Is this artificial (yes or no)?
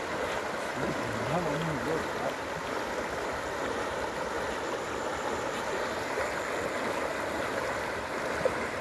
no